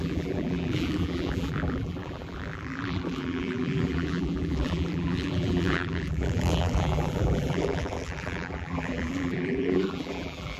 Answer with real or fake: fake